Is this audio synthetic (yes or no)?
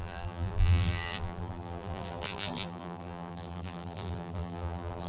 yes